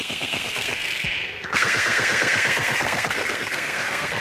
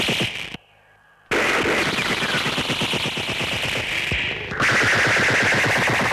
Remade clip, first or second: first